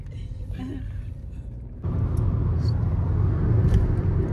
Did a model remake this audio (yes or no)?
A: no